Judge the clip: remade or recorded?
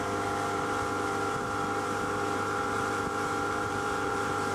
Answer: remade